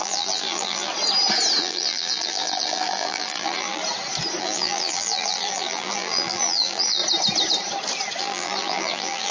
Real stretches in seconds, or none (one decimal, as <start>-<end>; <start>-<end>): 0.9-1.6; 3.8-4.4; 7.0-8.2